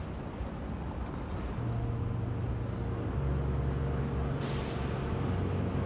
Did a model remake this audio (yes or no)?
no